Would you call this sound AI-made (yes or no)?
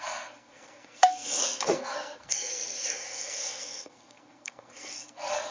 yes